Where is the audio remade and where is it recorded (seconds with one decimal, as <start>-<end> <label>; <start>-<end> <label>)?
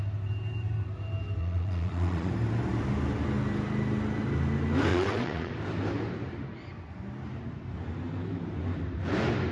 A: 0.0-1.4 recorded; 1.4-2.3 remade; 2.3-4.9 recorded; 4.9-5.5 remade; 5.5-9.5 recorded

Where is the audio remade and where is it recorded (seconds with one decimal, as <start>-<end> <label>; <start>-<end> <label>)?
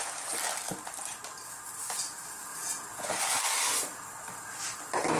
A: 0.0-2.5 recorded; 2.5-3.1 remade; 3.1-5.2 recorded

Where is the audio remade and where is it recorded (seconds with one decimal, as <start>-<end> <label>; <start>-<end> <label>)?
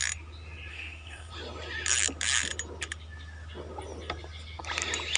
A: 0.0-0.7 recorded; 0.7-1.3 remade; 1.3-5.2 recorded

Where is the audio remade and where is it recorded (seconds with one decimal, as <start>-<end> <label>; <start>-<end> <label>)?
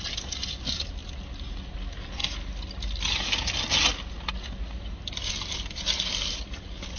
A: 0.0-7.0 recorded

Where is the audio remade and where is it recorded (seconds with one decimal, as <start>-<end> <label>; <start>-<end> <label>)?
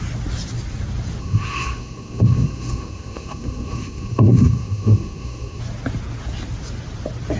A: 0.0-1.2 recorded; 1.2-5.6 remade; 5.6-7.4 recorded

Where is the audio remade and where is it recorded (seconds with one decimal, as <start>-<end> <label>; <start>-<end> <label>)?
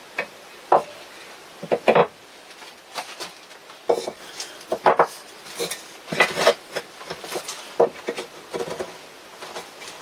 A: 0.0-10.0 recorded